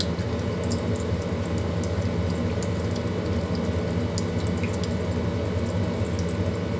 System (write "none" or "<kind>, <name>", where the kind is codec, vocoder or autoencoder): none